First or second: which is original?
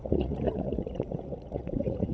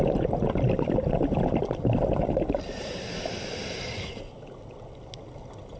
second